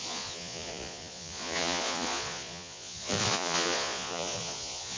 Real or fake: fake